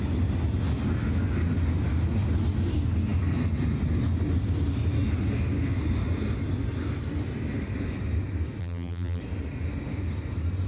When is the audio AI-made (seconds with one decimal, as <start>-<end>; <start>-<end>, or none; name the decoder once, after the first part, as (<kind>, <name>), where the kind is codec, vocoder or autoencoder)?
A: 8.6-9.2 (vocoder, BigVGAN v2)